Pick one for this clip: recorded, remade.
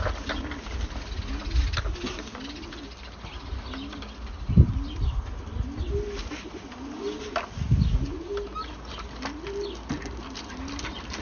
recorded